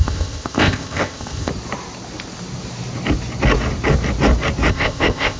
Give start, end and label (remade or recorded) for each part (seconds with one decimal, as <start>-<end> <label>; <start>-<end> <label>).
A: 0.0-1.5 remade; 1.5-4.7 recorded; 4.7-5.4 remade